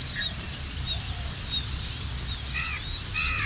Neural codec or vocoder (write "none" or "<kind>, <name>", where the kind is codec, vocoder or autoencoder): none